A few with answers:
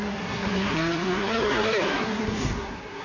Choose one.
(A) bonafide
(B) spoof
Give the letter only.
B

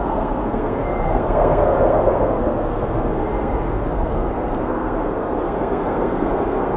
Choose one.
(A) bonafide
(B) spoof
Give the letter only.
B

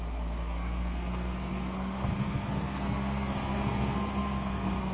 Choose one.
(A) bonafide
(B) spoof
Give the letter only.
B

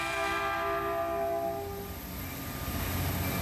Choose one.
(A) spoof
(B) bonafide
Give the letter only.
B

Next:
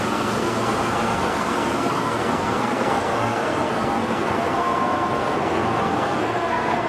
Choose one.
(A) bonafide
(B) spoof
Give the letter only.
B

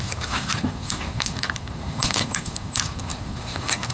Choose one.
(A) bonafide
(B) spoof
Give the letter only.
B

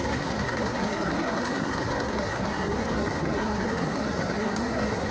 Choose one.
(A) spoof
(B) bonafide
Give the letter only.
A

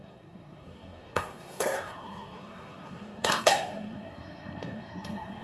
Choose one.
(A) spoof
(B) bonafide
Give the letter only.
A